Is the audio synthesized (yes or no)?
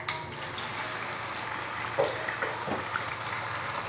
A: no